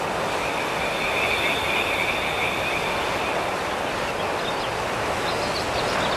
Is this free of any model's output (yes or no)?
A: yes